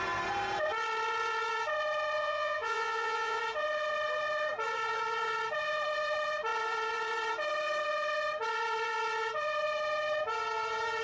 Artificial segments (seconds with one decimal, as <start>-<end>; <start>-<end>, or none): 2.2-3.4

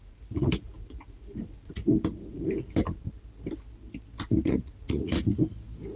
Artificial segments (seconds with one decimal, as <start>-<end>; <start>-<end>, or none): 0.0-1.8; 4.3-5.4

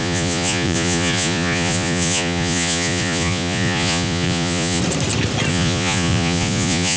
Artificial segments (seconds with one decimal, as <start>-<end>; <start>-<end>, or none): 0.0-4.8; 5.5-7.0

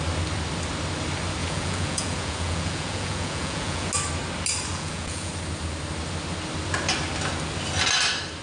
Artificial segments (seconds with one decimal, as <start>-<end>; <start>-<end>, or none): 1.4-3.9; 4.7-5.3

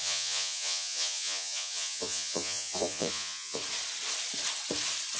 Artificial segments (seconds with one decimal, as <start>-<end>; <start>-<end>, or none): 0.0-3.6

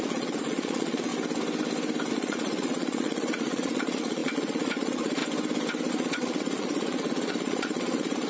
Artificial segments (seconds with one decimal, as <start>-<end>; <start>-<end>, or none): 0.0-1.1; 2.1-5.2; 5.9-8.3

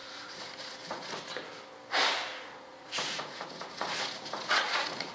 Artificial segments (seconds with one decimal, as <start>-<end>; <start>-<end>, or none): 0.0-1.1; 2.3-5.1

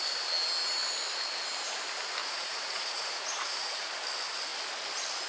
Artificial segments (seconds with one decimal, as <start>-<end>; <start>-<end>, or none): 2.2-3.9